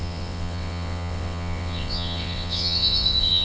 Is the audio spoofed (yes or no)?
yes